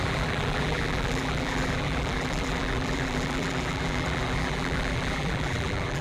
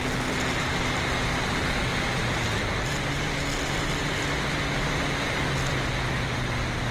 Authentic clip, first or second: second